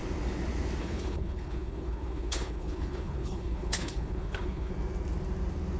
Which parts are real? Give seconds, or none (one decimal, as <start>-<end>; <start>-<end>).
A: 0.0-0.8; 4.7-5.8